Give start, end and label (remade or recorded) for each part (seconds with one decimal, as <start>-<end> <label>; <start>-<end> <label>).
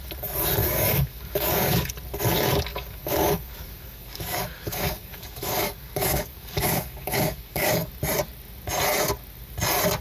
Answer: 0.0-0.6 recorded; 0.6-1.9 remade; 1.9-2.7 recorded; 2.7-7.9 remade; 7.9-10.0 recorded